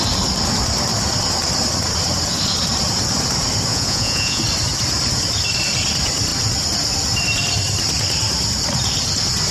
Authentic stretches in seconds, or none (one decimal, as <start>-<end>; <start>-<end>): 0.0-3.7; 4.4-9.5